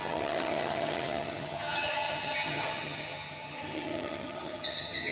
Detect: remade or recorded remade